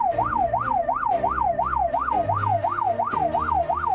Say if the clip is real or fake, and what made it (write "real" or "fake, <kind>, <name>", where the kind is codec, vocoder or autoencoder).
real